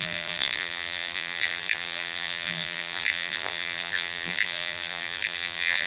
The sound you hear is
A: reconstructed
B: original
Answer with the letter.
A